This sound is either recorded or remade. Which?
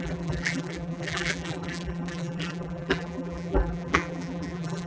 remade